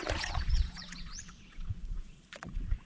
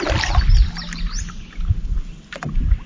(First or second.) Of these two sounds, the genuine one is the second